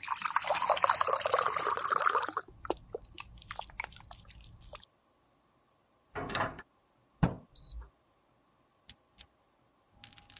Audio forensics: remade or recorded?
recorded